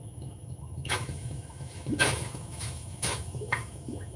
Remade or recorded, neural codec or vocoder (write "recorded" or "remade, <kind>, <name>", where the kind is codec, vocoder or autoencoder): remade, autoencoder, DAC-VAE